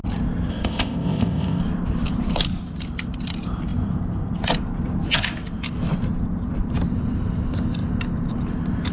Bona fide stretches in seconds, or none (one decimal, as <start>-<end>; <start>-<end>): 0.0-0.5; 1.6-8.9